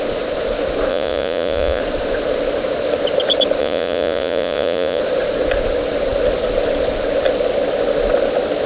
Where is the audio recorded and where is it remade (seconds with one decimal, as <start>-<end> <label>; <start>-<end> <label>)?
0.0-0.9 recorded; 0.9-1.8 remade; 1.8-3.6 recorded; 3.6-5.0 remade; 5.0-8.7 recorded